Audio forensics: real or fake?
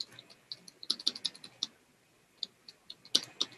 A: real